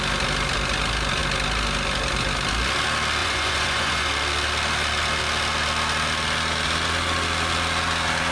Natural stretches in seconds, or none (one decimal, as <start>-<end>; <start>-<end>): 0.0-3.2; 4.1-8.3